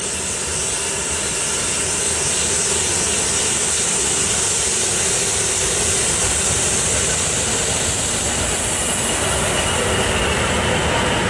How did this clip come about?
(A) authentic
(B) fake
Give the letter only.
B